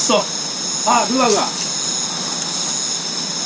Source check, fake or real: real